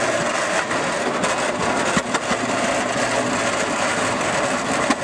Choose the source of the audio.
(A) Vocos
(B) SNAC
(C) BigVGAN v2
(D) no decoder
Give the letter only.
D